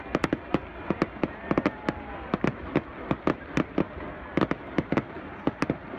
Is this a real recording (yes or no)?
yes